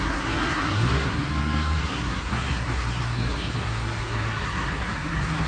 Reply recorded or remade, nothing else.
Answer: remade